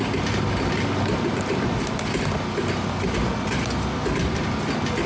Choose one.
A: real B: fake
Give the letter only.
A